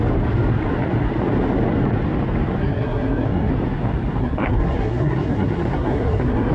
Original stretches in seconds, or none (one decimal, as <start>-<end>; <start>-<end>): 0.0-2.6; 3.5-4.2